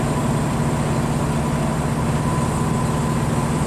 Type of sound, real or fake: real